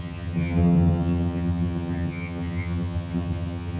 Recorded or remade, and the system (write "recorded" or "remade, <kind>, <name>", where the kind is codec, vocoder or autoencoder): remade, vocoder, HiFi-GAN